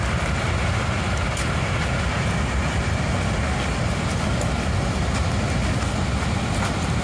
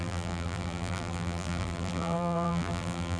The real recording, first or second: first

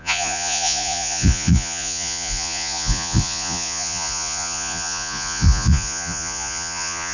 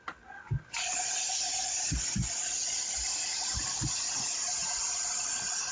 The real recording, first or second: second